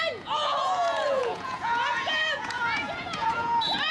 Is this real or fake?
fake